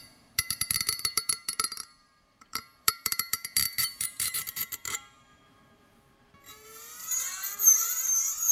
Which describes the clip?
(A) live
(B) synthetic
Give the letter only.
B